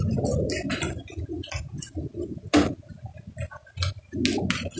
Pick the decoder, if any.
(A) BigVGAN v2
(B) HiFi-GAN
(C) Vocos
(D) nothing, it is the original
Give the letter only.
D